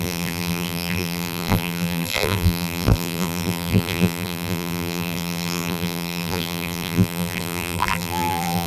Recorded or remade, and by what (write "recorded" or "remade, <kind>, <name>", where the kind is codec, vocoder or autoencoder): remade, vocoder, BigVGAN v2